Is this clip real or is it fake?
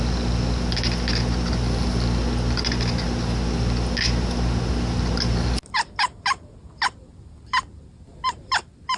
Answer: real